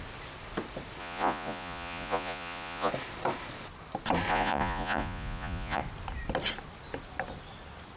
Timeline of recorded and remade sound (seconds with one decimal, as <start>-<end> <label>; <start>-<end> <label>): 0.0-1.0 recorded; 1.0-2.9 remade; 2.9-4.3 recorded; 4.3-5.8 remade; 5.8-8.0 recorded